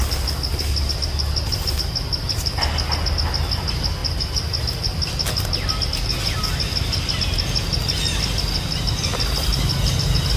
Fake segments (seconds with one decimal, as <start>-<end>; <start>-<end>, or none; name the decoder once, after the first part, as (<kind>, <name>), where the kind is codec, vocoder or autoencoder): none